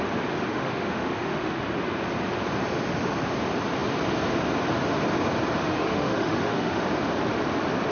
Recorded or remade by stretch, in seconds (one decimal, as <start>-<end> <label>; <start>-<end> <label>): 0.0-0.5 recorded; 0.5-1.6 remade; 1.6-5.6 recorded; 5.6-6.8 remade; 6.8-7.9 recorded